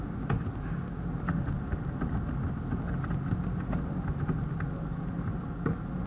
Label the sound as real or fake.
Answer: real